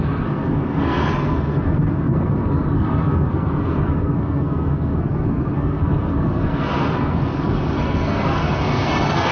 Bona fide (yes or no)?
no